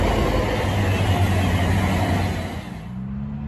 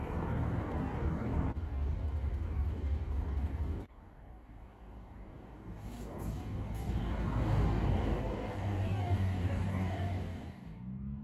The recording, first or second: first